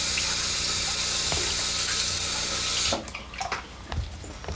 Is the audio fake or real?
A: real